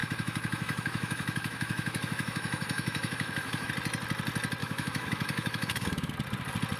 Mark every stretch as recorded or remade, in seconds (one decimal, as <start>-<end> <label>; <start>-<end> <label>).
0.0-3.7 remade; 3.7-4.6 recorded; 4.6-6.1 remade; 6.1-6.8 recorded